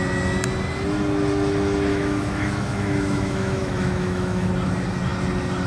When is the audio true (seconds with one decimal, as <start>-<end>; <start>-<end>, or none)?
0.0-1.9; 4.5-5.7